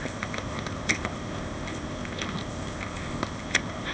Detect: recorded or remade remade